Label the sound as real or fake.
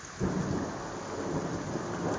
real